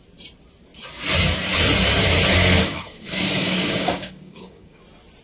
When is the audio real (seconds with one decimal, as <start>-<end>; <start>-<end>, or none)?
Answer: 0.0-2.6; 4.8-5.2